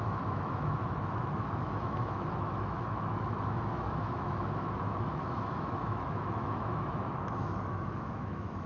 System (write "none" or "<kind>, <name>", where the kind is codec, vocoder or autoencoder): autoencoder, DAC-VAE